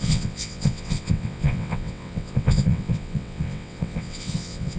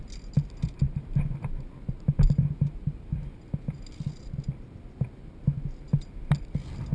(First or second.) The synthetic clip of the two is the first